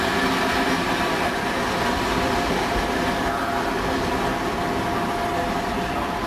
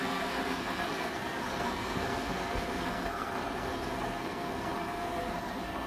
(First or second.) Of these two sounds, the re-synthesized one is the second